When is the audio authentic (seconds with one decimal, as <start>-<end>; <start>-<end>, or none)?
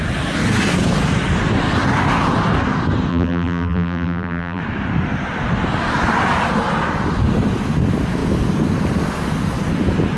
0.0-3.1; 4.6-10.2